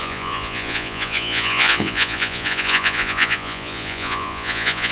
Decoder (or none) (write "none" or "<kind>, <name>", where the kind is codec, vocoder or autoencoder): vocoder, Vocos